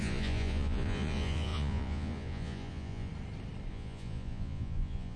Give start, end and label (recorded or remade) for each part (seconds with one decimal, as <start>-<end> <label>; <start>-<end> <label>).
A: 0.0-3.1 remade; 3.1-3.7 recorded; 3.7-5.2 remade